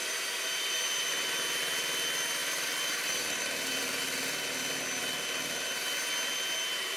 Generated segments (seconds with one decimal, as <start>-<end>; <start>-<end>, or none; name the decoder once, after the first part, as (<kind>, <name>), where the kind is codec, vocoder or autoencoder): 0.0-1.6 (vocoder, BigVGAN v2); 2.4-4.0